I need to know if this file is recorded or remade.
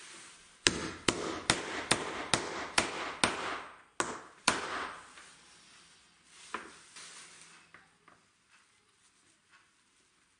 recorded